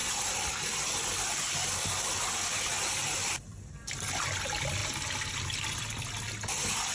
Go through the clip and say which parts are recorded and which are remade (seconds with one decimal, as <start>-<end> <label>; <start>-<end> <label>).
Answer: 0.0-6.9 recorded